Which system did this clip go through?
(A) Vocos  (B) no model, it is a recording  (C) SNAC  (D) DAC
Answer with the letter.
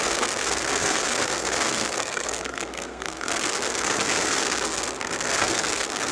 C